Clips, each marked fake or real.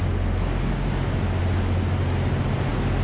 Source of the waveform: real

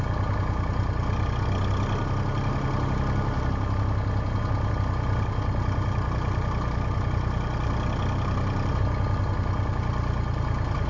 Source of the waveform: real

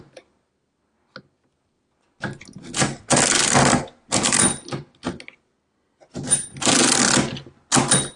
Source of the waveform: real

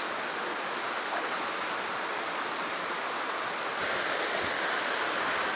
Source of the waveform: real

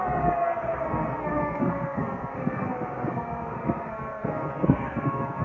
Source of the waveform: fake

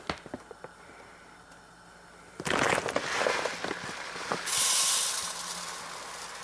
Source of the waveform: real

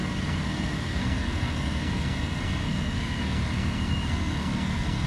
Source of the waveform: fake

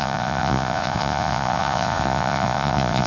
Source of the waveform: fake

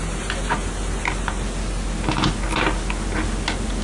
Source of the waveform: real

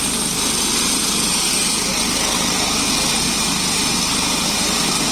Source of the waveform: real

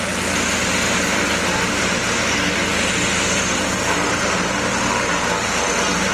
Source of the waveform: real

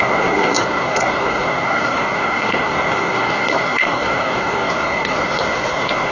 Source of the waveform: fake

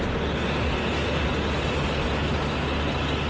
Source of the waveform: real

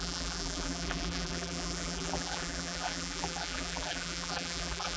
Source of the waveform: fake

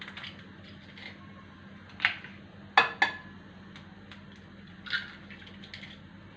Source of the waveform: real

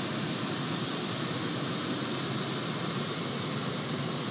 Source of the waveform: real